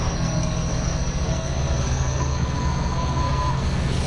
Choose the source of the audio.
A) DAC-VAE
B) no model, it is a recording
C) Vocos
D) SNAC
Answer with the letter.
D